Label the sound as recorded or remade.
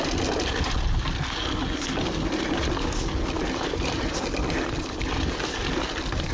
recorded